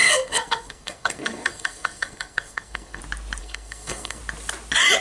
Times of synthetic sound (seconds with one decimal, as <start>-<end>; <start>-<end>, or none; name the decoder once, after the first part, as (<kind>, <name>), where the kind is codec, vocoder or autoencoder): 0.0-3.0 (codec, SNAC); 3.4-4.2